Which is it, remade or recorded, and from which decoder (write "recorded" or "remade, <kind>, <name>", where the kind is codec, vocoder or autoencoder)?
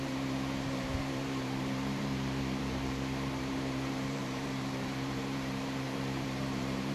remade, vocoder, BigVGAN v2